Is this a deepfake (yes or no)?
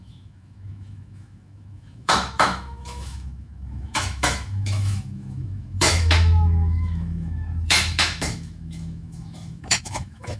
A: yes